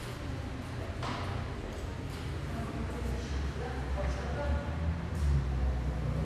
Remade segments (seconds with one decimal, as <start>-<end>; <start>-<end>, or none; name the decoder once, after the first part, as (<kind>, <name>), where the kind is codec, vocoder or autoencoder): none